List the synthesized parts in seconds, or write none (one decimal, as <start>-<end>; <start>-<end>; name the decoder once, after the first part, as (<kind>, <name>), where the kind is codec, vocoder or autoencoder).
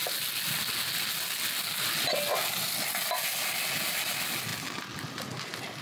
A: none